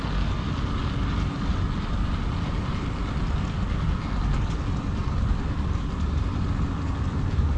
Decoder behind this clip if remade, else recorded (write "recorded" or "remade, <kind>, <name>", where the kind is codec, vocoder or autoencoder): recorded